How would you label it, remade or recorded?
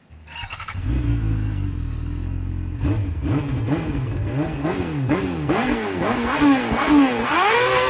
remade